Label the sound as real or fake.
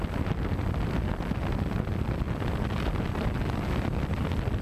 real